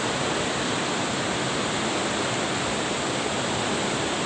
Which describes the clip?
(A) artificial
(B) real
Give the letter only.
B